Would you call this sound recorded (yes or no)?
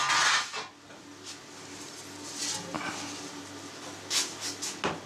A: yes